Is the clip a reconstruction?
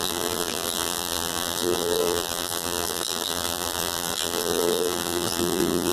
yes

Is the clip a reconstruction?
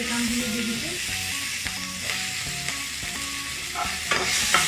no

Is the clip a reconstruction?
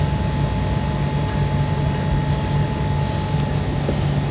no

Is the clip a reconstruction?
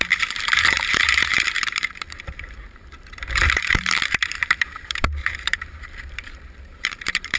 yes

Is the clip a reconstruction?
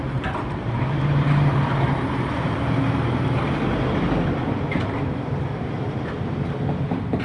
yes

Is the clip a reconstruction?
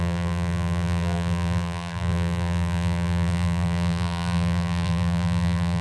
yes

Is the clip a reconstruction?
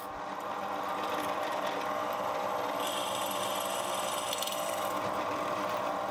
no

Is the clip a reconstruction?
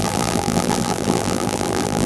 yes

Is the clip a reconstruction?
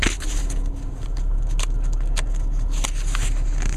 no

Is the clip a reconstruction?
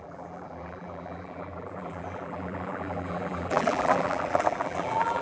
yes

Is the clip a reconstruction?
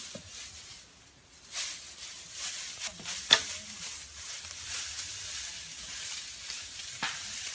no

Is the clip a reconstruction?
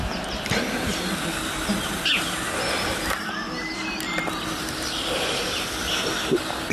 no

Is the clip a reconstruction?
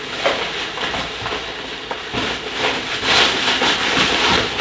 no